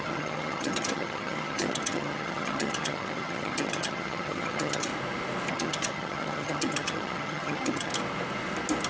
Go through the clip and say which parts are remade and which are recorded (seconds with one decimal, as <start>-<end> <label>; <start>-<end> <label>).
0.0-4.9 remade; 4.9-5.5 recorded; 5.5-7.9 remade; 7.9-8.9 recorded